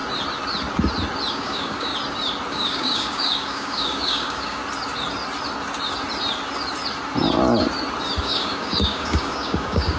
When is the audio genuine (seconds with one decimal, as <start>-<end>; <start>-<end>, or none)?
0.0-1.3; 1.9-2.5; 4.6-8.2